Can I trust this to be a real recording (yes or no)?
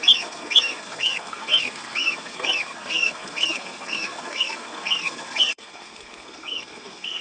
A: no